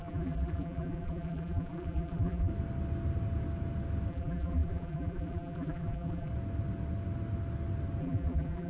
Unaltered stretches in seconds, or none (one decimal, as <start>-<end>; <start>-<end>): 2.5-4.1; 6.3-8.0